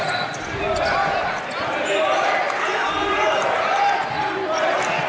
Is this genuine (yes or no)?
yes